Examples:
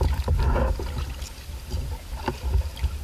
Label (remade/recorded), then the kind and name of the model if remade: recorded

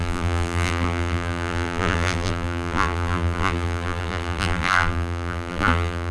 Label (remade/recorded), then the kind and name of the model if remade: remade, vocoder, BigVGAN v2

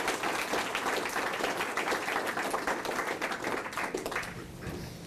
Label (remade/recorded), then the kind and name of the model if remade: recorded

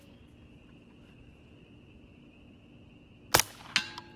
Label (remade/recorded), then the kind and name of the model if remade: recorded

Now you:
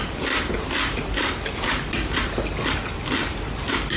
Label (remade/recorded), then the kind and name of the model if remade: remade, vocoder, BigVGAN v2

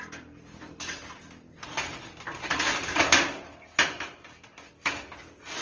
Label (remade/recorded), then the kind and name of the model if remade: recorded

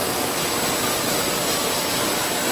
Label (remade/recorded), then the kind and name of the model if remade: recorded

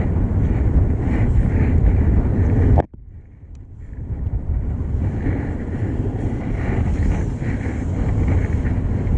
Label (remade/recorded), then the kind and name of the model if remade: remade, vocoder, BigVGAN v2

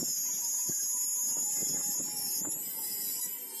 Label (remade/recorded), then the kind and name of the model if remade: recorded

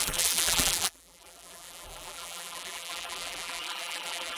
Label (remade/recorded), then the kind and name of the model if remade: remade, vocoder, BigVGAN v2